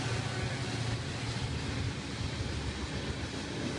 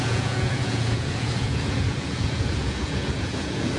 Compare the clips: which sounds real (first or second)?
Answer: first